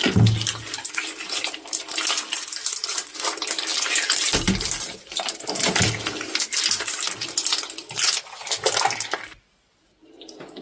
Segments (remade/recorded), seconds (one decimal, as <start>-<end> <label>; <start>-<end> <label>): 0.0-10.6 recorded